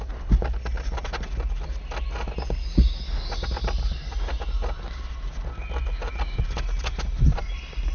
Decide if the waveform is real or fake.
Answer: real